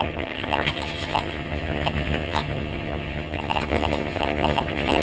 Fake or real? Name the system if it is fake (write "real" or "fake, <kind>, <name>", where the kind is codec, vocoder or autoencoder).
fake, vocoder, HiFi-GAN